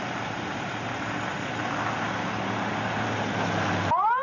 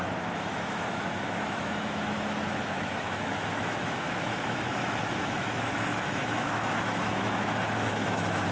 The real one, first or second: first